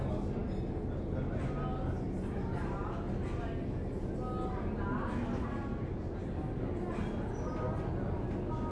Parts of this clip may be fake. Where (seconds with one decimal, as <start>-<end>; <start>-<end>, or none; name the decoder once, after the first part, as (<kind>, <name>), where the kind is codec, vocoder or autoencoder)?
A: none